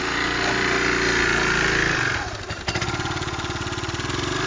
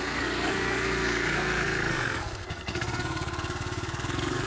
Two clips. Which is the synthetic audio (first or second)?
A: second